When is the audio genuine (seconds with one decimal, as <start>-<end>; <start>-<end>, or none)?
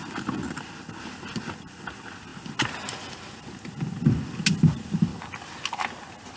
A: 0.0-6.4